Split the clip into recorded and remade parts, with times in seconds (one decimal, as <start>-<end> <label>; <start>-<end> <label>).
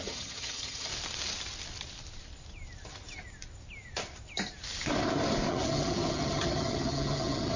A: 0.0-0.9 remade; 0.9-5.5 recorded; 5.5-7.6 remade